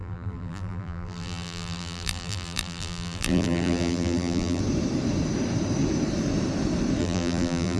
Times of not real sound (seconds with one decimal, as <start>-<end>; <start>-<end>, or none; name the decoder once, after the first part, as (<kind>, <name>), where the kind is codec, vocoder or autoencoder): 0.0-4.6 (vocoder, BigVGAN v2); 7.0-7.8